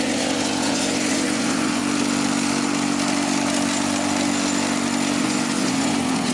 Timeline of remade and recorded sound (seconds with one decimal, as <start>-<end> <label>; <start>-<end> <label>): 0.0-1.8 remade; 1.8-5.2 recorded; 5.2-6.3 remade

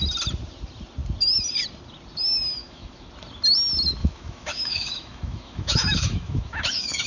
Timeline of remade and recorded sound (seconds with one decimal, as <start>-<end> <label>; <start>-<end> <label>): 0.0-2.6 recorded; 2.6-3.1 remade; 3.1-4.0 recorded; 4.0-7.1 remade